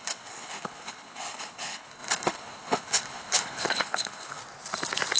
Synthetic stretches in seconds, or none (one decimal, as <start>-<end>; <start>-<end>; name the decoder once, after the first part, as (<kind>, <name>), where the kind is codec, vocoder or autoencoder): 0.0-4.4 (codec, HILCodec)